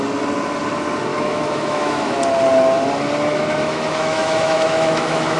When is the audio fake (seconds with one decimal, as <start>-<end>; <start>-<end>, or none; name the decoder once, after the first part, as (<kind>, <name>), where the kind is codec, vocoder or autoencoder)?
1.1-2.2 (autoencoder, DAC-VAE); 3.3-5.4